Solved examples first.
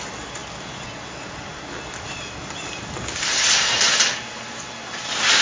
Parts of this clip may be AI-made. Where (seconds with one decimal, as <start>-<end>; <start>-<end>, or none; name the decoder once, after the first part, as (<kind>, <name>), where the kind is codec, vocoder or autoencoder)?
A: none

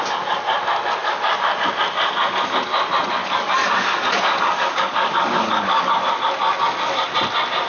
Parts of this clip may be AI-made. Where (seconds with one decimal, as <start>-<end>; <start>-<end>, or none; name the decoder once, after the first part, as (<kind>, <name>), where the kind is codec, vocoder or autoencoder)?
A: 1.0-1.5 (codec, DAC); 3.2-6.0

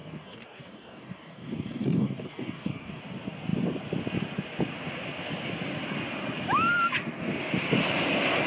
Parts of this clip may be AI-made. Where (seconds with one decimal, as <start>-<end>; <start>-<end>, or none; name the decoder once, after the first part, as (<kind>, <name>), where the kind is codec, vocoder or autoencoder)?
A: 0.0-3.0 (codec, DAC)

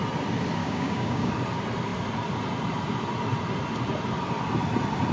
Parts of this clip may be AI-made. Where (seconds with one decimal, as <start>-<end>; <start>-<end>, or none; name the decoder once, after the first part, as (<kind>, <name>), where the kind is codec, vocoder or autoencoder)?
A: 0.6-1.3 (codec, DAC)

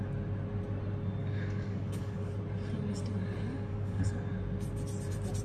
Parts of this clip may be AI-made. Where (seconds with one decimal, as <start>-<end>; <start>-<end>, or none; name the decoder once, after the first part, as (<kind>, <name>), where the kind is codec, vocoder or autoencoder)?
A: 1.2-2.3 (codec, DAC); 3.5-4.1

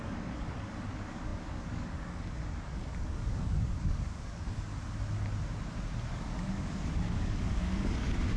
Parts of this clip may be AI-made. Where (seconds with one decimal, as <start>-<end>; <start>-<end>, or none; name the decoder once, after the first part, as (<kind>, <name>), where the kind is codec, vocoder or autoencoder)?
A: 0.0-4.7 (codec, DAC); 6.1-8.4

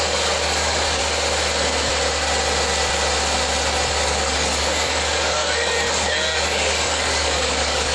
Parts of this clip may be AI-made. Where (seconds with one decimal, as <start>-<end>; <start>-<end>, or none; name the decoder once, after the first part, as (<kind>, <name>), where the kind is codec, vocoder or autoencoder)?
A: 0.0-1.0 (codec, DAC); 3.9-7.9

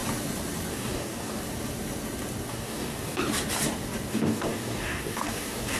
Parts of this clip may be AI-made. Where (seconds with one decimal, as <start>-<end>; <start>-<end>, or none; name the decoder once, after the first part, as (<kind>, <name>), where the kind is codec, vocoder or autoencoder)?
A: 0.7-1.4 (codec, DAC); 2.5-3.2; 4.1-5.8